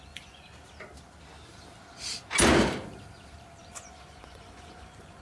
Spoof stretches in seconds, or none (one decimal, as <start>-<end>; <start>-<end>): 0.0-0.5; 3.6-5.2